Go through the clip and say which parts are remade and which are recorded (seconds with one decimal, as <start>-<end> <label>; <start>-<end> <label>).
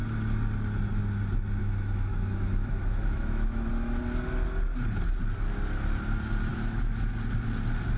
0.0-1.6 recorded; 1.6-4.0 remade; 4.0-6.5 recorded; 6.5-7.1 remade; 7.1-8.0 recorded